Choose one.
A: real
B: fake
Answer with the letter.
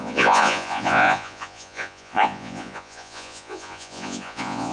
B